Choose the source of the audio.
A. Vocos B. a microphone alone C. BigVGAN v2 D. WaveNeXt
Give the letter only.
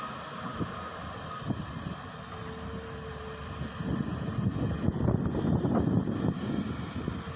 B